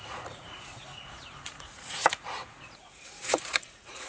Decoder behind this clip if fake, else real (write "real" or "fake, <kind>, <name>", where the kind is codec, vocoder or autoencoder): fake, vocoder, Vocos